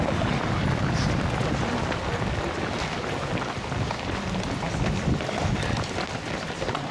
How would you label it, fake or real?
real